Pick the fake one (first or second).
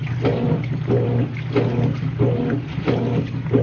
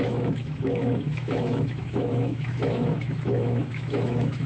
second